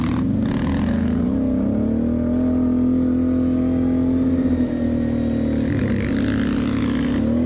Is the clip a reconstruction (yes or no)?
no